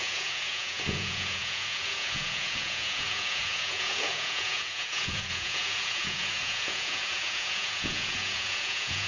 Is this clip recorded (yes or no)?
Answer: no